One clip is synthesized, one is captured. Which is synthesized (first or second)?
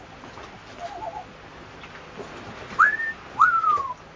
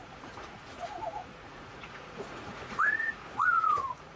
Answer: second